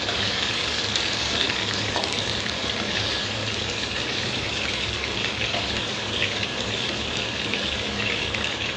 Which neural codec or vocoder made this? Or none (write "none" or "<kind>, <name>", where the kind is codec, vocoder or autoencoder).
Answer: codec, DAC